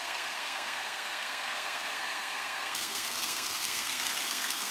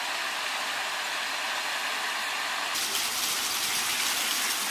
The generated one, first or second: first